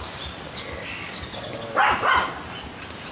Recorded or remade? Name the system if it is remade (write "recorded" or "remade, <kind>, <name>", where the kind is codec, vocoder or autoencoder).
recorded